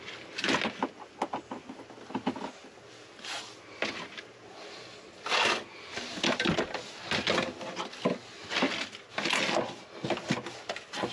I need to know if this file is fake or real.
real